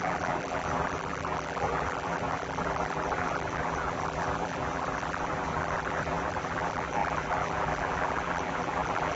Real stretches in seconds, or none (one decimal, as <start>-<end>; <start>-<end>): none